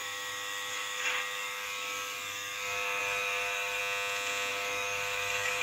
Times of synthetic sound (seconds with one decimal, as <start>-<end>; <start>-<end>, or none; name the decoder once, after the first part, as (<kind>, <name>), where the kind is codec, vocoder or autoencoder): 0.0-3.8 (codec, DAC); 4.5-5.6